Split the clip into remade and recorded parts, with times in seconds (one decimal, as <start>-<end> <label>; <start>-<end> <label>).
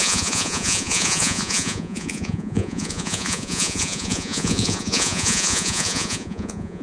0.0-6.8 remade